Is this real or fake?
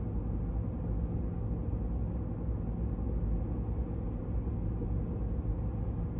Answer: real